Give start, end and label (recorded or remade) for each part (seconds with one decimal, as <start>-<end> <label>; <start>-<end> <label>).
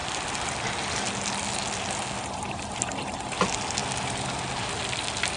0.0-5.4 recorded